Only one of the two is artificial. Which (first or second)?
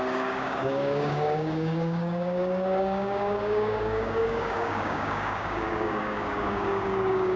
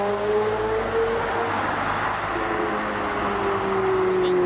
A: first